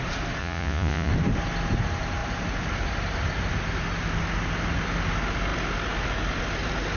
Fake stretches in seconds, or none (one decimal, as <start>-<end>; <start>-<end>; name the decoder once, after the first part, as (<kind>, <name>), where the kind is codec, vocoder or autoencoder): 0.4-1.1 (vocoder, Vocos)